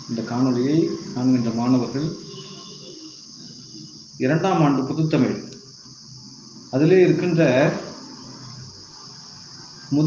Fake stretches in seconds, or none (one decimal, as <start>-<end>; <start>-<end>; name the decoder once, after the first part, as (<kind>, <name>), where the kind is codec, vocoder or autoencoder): 1.1-3.4 (autoencoder, DAC-VAE)